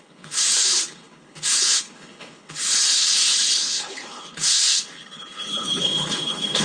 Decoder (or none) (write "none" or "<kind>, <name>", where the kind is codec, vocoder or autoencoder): codec, HILCodec